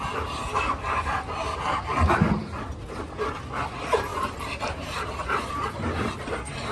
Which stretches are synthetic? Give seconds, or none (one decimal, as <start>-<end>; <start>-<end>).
4.1-6.3